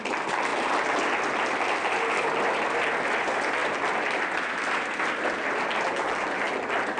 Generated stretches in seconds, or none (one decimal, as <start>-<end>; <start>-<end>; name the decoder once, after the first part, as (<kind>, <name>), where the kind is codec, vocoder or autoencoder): none